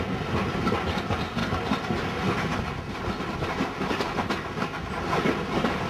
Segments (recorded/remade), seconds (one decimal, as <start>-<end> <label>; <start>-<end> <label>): 0.0-5.9 recorded